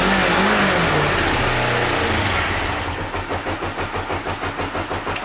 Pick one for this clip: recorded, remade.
recorded